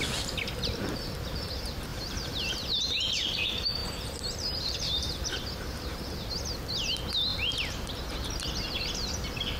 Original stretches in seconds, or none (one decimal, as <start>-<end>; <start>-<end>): 0.0-1.9; 2.5-3.8; 6.3-7.3; 8.3-9.6